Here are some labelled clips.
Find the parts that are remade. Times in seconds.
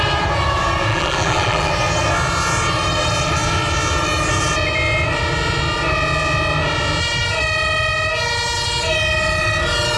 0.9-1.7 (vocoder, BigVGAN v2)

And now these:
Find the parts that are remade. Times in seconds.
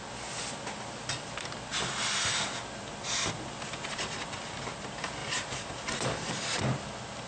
5.2-6.3 (vocoder, BigVGAN v2)